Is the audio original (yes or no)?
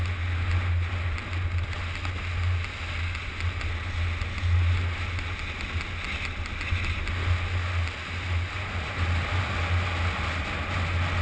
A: yes